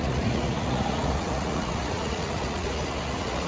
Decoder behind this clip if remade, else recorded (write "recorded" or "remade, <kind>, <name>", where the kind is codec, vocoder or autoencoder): remade, vocoder, Vocos